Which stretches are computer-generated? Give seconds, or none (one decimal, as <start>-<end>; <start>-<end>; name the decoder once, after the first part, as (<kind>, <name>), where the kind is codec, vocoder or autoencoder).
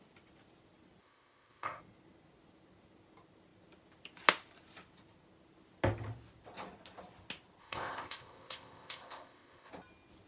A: 1.0-1.8 (codec, ZipCodec); 7.6-9.7